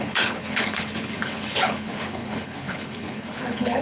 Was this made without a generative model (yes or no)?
no